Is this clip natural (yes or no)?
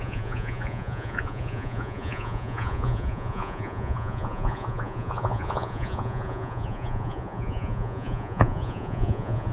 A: no